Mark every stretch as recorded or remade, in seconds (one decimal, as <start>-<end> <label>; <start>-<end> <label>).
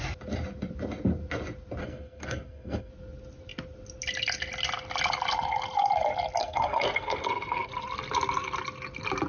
0.0-1.8 recorded; 1.8-2.9 remade; 2.9-6.4 recorded; 6.4-7.7 remade; 7.7-9.3 recorded